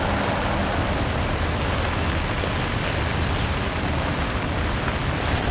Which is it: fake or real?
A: real